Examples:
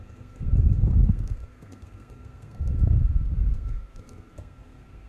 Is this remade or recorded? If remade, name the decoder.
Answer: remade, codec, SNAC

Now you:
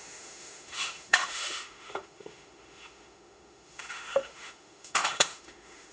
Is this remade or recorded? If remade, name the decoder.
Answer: remade, autoencoder, DAC-VAE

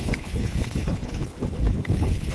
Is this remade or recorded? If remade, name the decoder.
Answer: remade, codec, HILCodec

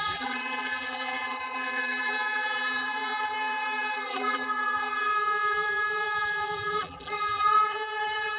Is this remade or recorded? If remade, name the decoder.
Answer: remade, vocoder, BigVGAN v2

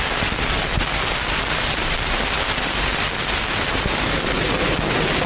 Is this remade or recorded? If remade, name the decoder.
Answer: recorded